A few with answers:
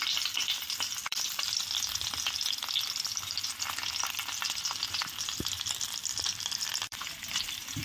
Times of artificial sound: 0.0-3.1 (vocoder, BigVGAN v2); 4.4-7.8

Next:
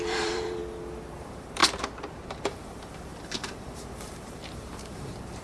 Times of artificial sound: 0.0-0.6 (vocoder, BigVGAN v2); 1.2-1.6; 2.1-5.4

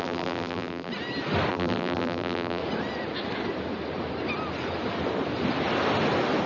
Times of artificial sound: 0.0-0.9 (vocoder, BigVGAN v2); 1.5-2.6